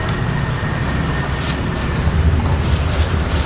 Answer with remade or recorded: recorded